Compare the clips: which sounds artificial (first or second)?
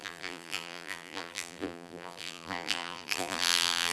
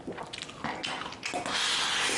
first